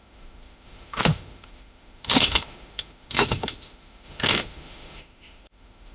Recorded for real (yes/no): no